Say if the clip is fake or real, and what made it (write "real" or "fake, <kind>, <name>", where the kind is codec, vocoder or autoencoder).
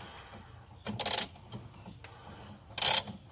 real